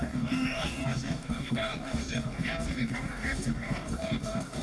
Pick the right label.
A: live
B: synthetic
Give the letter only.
B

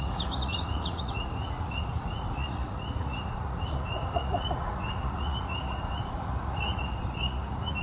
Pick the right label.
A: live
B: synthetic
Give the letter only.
B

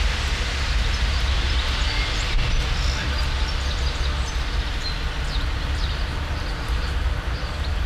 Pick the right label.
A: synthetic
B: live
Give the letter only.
B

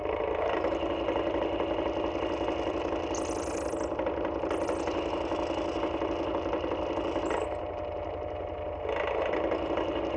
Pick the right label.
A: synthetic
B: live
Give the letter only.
B